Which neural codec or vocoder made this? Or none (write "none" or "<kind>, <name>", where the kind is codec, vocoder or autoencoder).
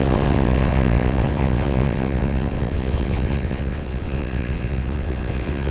vocoder, WaveNeXt